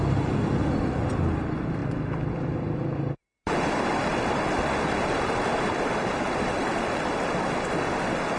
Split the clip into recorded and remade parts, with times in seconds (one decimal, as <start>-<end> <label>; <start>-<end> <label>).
0.0-8.4 recorded